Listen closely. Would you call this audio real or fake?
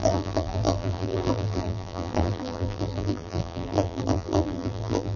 fake